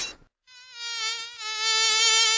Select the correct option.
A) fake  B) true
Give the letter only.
B